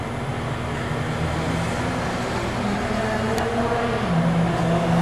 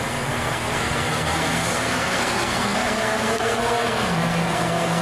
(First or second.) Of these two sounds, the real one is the first